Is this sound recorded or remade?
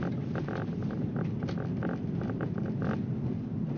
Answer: recorded